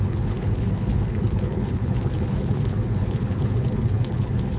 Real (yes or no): no